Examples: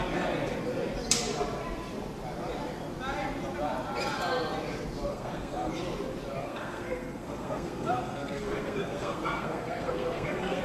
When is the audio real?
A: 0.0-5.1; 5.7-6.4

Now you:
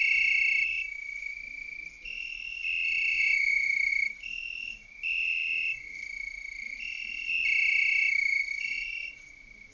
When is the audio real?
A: 0.0-9.7

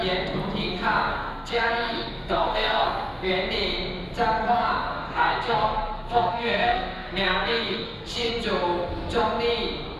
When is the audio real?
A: 0.0-1.1; 3.3-4.9; 8.3-10.0

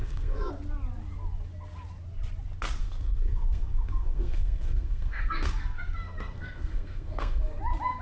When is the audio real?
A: 0.5-2.8; 7.6-8.0

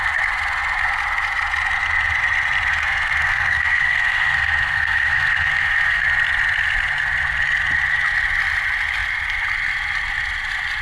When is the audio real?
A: 0.0-2.7; 6.0-10.8

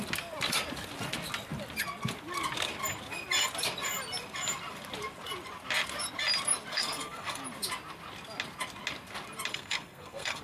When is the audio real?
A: 0.0-6.7; 7.4-9.5

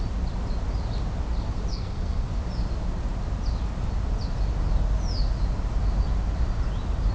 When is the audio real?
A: 0.0-1.7; 2.4-7.1